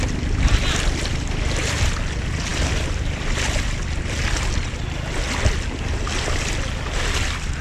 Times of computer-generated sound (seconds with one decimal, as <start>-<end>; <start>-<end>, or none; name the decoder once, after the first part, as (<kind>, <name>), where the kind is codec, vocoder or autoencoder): 2.5-4.2 (vocoder, BigVGAN v2)